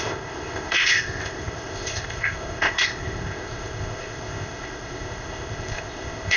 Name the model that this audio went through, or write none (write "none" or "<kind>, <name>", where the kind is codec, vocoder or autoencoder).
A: codec, ZipCodec